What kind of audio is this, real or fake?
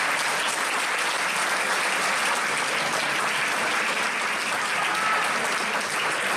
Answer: real